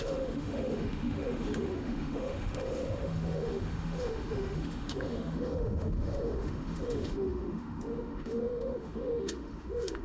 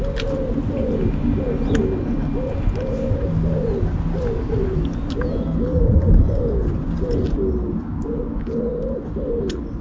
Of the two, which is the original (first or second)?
second